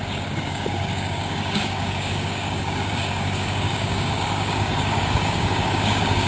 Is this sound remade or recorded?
remade